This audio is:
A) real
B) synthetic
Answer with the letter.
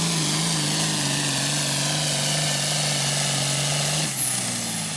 A